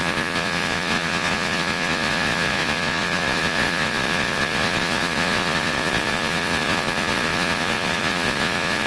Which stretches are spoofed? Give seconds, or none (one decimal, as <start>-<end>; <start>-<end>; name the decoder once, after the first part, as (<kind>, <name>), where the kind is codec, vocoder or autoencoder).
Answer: 0.0-8.9 (vocoder, Vocos)